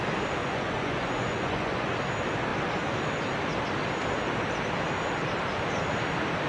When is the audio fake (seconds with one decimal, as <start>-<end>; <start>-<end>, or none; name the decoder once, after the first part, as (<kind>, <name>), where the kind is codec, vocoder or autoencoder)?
0.4-1.9 (vocoder, Vocos)